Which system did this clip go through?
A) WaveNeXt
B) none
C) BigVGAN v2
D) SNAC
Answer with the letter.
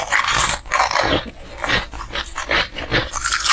B